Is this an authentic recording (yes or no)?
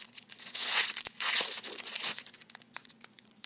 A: no